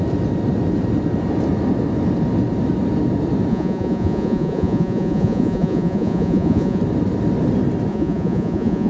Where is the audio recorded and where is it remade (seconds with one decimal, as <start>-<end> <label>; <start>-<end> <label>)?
0.0-3.5 recorded; 3.5-6.8 remade; 6.8-7.9 recorded; 7.9-8.9 remade